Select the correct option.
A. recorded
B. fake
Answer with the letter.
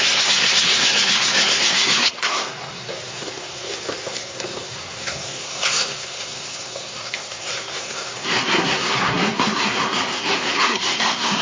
B